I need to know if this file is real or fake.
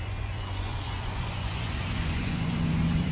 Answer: fake